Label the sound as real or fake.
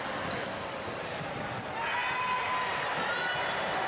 real